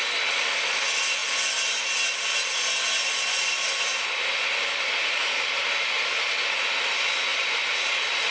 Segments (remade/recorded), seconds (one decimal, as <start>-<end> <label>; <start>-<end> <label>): 0.0-7.3 recorded; 7.3-7.9 remade; 7.9-8.3 recorded